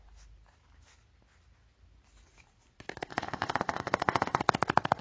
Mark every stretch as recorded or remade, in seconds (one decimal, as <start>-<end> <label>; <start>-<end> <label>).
0.0-3.1 recorded; 3.1-4.4 remade; 4.4-5.0 recorded